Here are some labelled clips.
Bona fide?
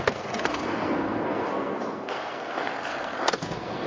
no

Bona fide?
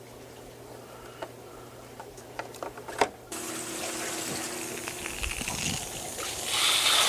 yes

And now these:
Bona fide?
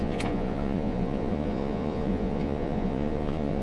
no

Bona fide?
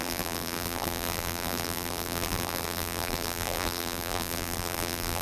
no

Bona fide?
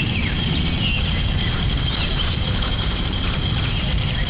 no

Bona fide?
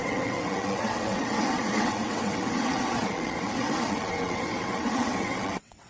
no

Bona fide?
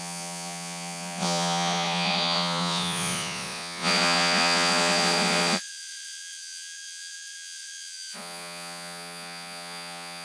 no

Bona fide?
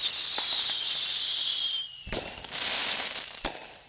yes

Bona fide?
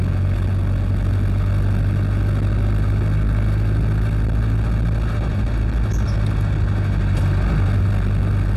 yes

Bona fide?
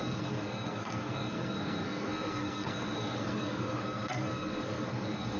no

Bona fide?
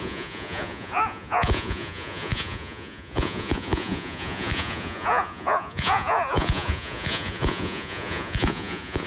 no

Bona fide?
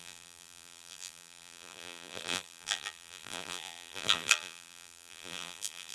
no